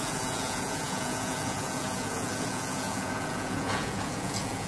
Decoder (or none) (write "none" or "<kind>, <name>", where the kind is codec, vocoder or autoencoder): vocoder, Vocos